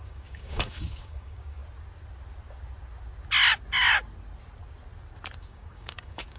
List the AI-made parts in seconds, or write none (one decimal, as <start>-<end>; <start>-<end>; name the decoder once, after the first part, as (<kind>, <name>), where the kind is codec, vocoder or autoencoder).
0.0-1.6 (codec, DAC); 5.4-6.4